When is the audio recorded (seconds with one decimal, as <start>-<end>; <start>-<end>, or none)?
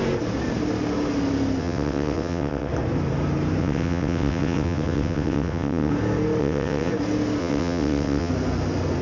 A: 0.0-1.6; 2.7-3.6; 5.9-6.4; 6.9-7.4; 8.3-9.0